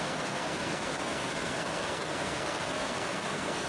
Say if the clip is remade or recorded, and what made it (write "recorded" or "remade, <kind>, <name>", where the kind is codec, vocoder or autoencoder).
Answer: remade, codec, SNAC